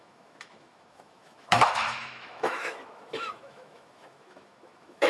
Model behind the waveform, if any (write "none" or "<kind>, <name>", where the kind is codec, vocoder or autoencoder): autoencoder, DAC-VAE